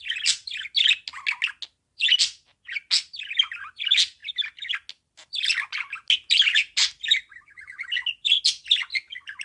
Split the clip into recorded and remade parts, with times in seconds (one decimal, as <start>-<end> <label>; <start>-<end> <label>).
0.0-9.4 recorded